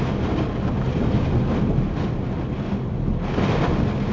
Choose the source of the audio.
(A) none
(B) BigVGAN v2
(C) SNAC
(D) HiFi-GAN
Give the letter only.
A